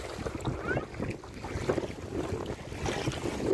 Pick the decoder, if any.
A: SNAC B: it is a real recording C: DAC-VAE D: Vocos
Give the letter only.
B